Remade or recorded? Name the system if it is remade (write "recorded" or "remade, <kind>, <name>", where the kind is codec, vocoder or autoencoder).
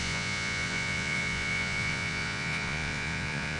remade, vocoder, Vocos